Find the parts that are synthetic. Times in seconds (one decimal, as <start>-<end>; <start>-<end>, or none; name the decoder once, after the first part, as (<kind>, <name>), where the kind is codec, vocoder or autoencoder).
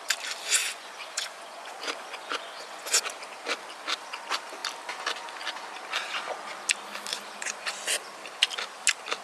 0.6-3.0 (vocoder, Vocos); 7.1-7.7